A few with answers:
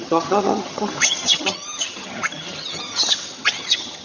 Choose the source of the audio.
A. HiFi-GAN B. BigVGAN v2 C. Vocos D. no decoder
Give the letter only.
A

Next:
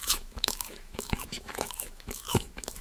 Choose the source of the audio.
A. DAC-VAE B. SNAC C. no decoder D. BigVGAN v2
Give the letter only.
A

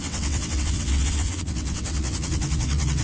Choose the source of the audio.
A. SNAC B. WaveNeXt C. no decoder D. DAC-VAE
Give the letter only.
B